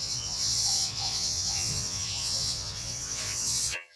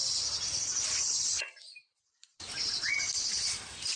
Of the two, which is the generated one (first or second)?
first